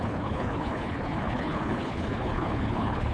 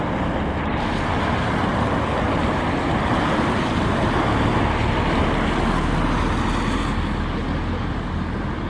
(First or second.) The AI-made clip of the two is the first